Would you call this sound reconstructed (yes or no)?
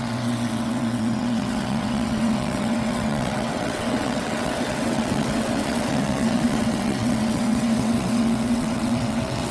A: yes